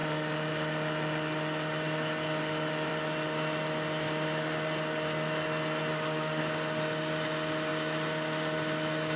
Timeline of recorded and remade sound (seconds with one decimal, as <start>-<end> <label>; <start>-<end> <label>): 0.0-5.9 recorded; 5.9-6.4 remade; 6.4-9.2 recorded